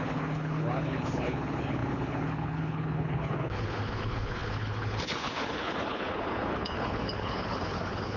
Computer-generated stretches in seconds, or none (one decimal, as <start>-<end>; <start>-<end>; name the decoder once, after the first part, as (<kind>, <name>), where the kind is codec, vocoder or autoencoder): 0.0-8.2 (codec, HILCodec)